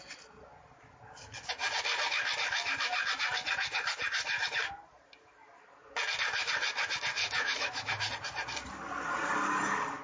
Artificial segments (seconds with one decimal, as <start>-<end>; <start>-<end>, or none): 7.2-8.1